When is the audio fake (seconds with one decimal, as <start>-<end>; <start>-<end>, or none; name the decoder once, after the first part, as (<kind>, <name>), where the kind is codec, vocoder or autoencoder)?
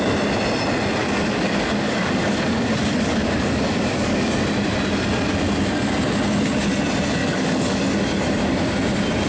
1.0-4.3 (codec, DAC); 7.2-7.8